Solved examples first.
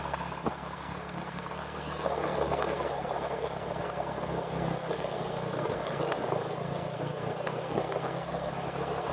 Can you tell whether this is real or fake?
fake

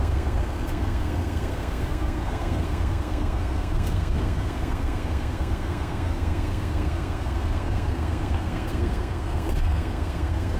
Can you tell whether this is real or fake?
fake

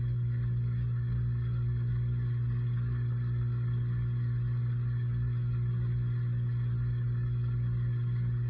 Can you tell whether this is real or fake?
real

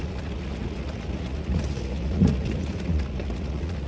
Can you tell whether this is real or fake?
fake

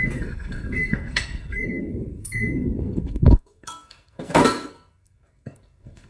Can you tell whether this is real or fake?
fake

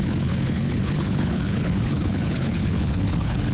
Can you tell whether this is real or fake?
fake